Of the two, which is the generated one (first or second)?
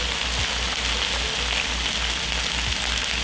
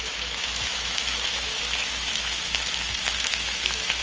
second